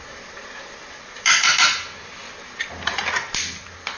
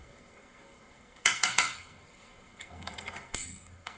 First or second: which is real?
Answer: first